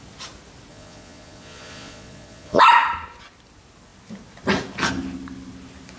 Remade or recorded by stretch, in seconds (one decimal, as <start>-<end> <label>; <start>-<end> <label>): 0.0-0.7 recorded; 0.7-2.6 remade; 2.6-6.0 recorded

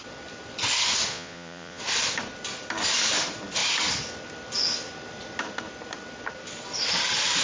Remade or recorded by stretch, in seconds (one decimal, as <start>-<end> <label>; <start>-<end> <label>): 0.0-1.1 recorded; 1.1-1.8 remade; 1.8-7.4 recorded

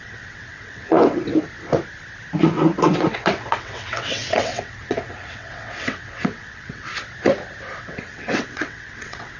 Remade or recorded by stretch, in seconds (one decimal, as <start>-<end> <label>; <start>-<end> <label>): 0.0-1.3 remade; 1.3-2.4 recorded; 2.4-6.9 remade; 6.9-7.8 recorded; 7.8-9.4 remade

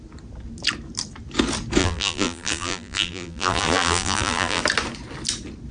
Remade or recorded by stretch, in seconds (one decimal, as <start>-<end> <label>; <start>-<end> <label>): 0.0-1.8 recorded; 1.8-4.6 remade; 4.6-5.7 recorded

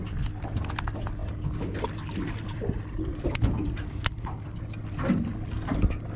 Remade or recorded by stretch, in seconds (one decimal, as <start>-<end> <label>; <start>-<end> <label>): 0.0-6.2 recorded

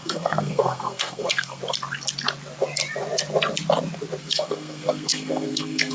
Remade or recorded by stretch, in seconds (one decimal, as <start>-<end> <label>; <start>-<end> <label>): 0.0-1.6 remade; 1.6-4.2 recorded; 4.2-5.9 remade

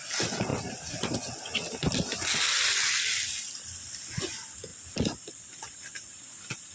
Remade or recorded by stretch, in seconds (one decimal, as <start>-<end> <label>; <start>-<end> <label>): 0.0-6.7 recorded